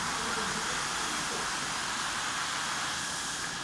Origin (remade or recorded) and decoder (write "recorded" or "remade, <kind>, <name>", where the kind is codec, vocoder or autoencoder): recorded